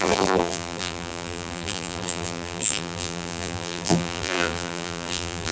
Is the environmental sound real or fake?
fake